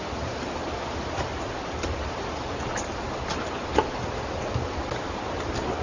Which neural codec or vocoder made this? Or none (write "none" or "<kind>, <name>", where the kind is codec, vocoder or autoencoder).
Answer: vocoder, BigVGAN v2